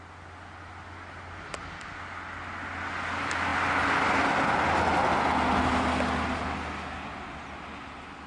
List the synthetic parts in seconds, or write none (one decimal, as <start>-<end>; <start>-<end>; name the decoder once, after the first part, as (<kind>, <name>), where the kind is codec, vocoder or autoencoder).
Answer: none